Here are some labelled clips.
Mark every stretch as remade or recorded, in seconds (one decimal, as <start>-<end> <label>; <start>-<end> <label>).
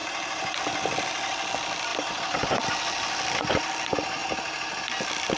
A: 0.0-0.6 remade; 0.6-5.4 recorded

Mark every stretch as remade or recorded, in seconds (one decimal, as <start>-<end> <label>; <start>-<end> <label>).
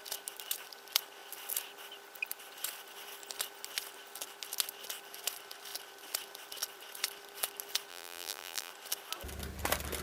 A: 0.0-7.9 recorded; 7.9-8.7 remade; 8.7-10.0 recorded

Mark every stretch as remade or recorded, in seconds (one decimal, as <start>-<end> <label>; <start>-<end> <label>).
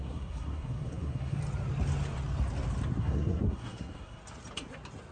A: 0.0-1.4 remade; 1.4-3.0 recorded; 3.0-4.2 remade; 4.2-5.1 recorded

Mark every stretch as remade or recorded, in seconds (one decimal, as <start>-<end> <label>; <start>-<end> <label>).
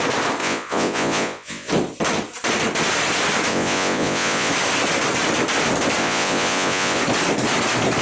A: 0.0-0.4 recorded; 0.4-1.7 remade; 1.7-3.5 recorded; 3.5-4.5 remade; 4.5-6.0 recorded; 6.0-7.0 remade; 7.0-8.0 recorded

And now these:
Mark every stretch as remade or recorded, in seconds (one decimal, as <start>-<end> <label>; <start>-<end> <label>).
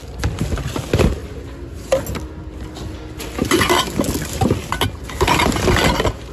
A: 0.0-6.3 recorded